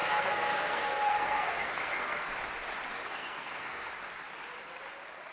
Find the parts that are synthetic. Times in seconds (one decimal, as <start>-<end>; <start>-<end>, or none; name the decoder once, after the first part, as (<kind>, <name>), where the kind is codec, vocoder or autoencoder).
0.0-2.4 (codec, SNAC); 2.9-3.9